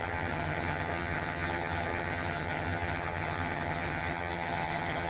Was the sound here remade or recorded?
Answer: remade